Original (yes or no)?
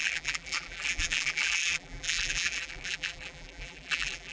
no